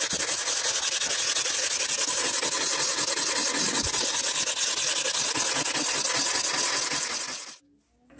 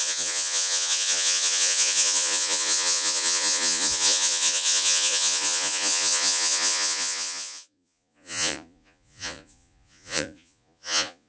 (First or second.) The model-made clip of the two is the second